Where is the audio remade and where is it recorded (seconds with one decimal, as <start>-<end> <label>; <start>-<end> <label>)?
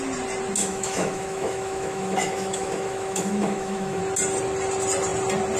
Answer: 0.0-0.6 recorded; 0.6-4.0 remade; 4.0-5.6 recorded